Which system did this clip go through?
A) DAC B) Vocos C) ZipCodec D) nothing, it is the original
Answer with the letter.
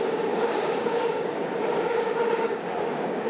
A